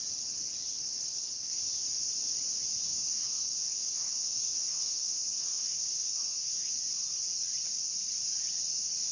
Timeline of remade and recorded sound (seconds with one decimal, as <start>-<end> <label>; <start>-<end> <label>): 0.0-2.9 recorded; 2.9-6.7 remade; 6.7-9.1 recorded